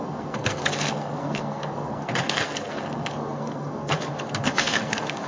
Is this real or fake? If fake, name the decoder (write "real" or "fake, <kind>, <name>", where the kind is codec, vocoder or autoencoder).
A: fake, codec, SNAC